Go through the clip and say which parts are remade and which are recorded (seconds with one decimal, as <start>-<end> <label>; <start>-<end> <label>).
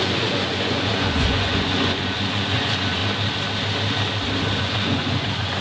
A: 0.0-3.0 remade; 3.0-4.6 recorded; 4.6-5.6 remade